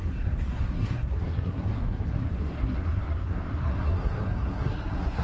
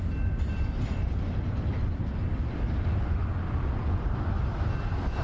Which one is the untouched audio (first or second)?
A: second